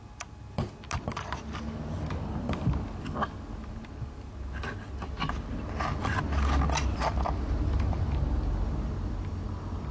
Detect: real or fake real